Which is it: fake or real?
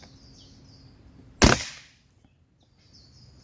real